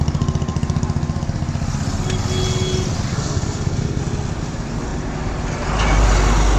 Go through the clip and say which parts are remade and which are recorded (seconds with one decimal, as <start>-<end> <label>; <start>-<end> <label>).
0.0-3.1 recorded; 3.1-4.0 remade; 4.0-6.6 recorded